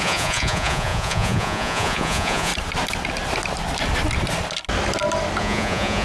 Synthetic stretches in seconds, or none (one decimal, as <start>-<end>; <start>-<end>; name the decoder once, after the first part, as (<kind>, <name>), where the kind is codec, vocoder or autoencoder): 0.0-2.5 (vocoder, Vocos); 5.4-6.0